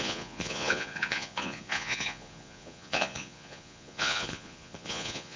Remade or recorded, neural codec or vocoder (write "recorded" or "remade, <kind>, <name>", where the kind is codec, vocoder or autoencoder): remade, vocoder, Vocos